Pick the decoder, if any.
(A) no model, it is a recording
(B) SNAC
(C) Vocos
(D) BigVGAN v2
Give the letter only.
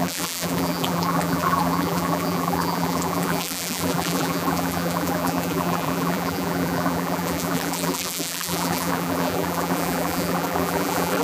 D